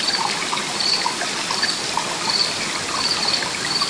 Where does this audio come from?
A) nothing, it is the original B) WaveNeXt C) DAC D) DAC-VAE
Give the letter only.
A